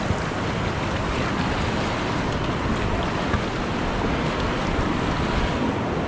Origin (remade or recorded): recorded